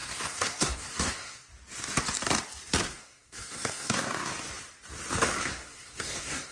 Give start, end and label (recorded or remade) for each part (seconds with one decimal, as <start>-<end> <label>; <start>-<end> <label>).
0.0-1.5 remade; 1.5-2.8 recorded; 2.8-4.3 remade; 4.3-5.4 recorded; 5.4-6.5 remade